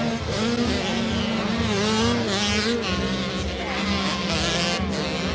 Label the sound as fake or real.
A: real